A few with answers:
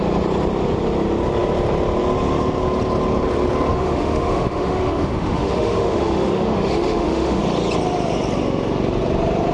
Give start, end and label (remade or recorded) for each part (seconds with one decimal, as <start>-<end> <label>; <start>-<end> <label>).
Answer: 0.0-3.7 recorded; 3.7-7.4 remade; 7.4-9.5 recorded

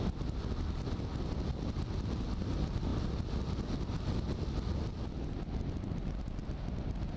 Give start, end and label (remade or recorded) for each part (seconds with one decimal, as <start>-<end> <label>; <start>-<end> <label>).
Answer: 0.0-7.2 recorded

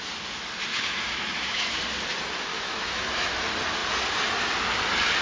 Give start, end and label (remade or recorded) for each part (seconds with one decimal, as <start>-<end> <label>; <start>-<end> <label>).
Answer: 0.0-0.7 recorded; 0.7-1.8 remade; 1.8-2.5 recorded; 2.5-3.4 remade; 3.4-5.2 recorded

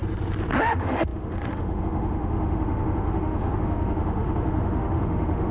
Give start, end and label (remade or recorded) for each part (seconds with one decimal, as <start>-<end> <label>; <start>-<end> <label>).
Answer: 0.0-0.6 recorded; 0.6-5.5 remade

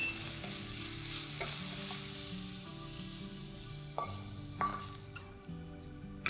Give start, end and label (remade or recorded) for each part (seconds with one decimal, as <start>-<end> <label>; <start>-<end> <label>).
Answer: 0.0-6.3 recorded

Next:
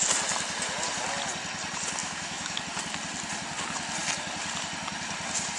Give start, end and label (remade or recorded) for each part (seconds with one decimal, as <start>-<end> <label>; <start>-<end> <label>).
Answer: 0.0-2.0 recorded; 2.0-2.6 remade; 2.6-5.6 recorded

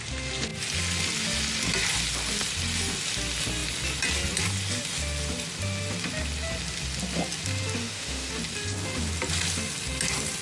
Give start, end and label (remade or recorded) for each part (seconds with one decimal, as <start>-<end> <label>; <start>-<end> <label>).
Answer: 0.0-7.8 recorded; 7.8-8.3 remade; 8.3-10.4 recorded